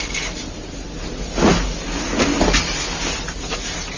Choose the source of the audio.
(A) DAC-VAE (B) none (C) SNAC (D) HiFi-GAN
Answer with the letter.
B